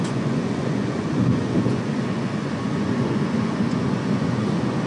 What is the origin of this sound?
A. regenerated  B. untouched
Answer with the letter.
A